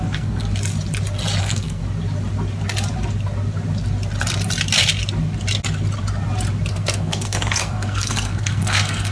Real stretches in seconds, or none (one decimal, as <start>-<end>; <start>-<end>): 0.4-1.4; 1.8-6.7

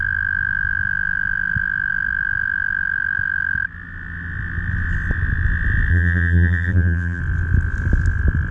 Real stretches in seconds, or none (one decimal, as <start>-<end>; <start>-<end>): 0.0-5.9; 7.2-8.5

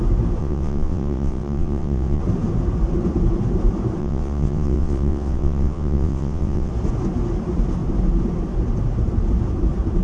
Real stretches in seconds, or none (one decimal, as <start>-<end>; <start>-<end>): 0.0-0.4; 2.2-4.0; 6.7-10.0

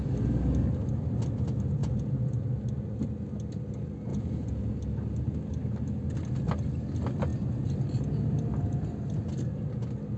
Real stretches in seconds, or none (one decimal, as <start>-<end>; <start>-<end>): 0.0-1.8; 2.5-4.1; 4.7-10.2

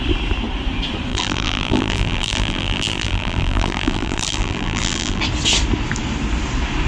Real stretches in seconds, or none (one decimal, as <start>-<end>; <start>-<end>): 0.0-1.1; 5.2-6.9

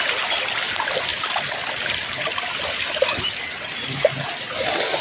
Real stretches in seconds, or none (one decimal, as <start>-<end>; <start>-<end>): 0.0-1.1; 3.4-5.0

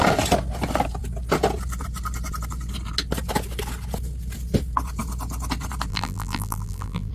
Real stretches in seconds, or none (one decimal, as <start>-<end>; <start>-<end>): 0.0-5.9

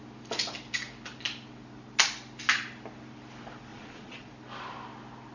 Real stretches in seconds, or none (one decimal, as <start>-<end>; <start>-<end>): 0.0-3.7; 4.3-5.3